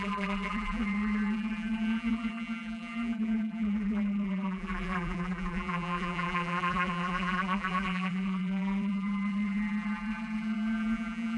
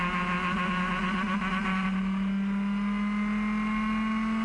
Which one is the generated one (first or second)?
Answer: first